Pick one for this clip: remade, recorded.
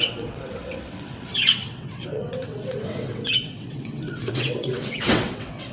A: remade